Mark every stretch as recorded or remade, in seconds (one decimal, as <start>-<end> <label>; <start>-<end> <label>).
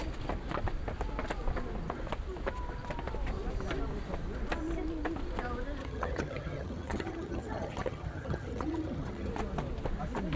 0.0-5.8 recorded; 5.8-9.3 remade; 9.3-10.4 recorded